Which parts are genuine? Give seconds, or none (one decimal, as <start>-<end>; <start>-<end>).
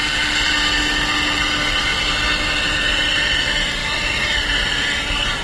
0.0-5.4